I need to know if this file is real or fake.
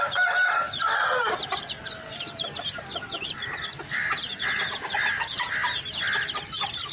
real